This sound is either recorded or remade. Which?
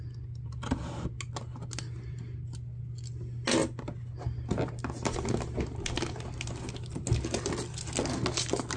recorded